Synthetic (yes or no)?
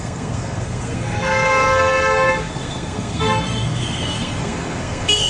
yes